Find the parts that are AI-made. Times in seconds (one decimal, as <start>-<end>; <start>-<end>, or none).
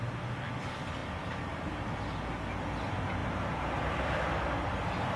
1.0-1.7; 3.2-4.1